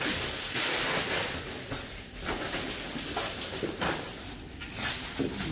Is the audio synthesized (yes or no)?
no